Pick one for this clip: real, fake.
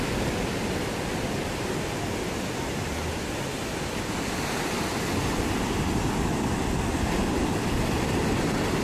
real